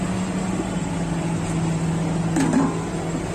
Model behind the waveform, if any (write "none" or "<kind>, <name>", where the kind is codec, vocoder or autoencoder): none